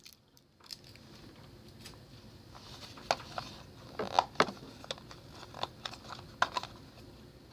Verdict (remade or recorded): recorded